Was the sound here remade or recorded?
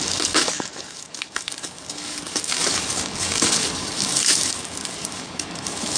remade